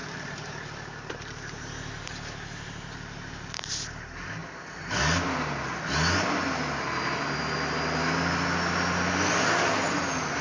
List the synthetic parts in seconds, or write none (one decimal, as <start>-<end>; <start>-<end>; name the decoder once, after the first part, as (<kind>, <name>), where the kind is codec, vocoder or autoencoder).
0.0-3.7 (vocoder, BigVGAN v2)